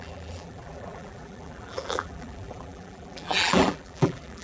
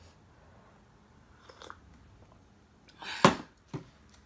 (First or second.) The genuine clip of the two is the second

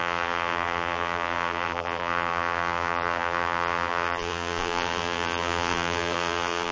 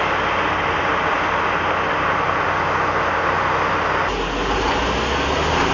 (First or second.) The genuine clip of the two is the second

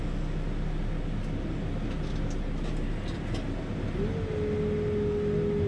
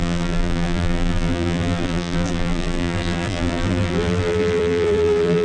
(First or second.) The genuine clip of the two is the first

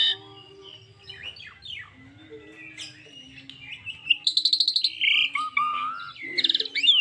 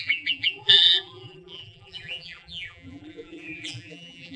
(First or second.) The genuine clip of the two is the first